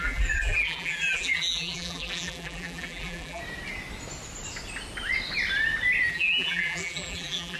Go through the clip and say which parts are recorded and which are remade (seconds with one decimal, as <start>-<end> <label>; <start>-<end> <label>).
0.0-3.4 remade; 3.4-6.1 recorded; 6.1-7.6 remade